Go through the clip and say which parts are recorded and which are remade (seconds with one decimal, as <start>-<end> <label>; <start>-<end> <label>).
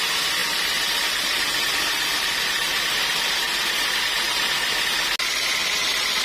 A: 0.0-6.2 recorded